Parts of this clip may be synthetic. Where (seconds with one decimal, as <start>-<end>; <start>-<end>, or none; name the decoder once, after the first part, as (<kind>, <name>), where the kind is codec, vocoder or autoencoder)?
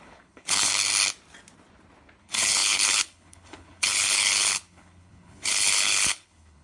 0.0-0.7 (codec, HILCodec); 2.2-6.6